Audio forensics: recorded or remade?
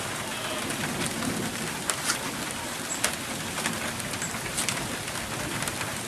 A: recorded